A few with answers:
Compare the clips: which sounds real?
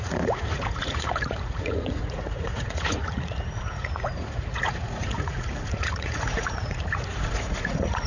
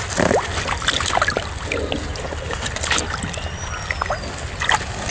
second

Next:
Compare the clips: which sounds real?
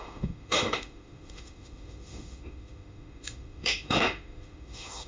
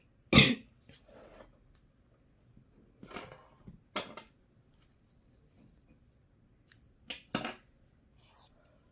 second